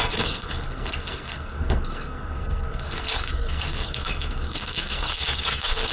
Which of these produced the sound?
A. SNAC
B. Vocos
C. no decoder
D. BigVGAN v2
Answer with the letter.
A